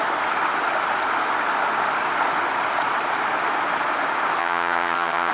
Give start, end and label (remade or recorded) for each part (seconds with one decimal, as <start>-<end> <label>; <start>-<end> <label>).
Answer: 0.0-4.4 recorded; 4.4-5.3 remade